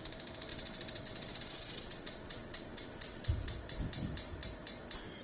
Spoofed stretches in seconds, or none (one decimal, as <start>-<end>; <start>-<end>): 0.5-3.6